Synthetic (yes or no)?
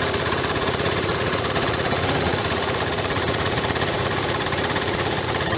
yes